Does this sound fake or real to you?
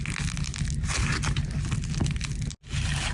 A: real